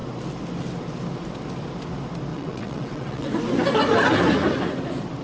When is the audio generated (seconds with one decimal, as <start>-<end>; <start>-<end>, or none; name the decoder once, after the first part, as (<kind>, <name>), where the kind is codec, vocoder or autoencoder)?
2.3-3.3 (vocoder, WaveNeXt)